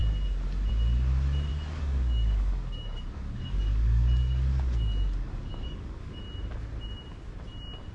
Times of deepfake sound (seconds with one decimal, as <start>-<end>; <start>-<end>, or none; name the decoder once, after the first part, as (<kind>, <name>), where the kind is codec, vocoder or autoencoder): 1.5-6.2 (codec, DAC)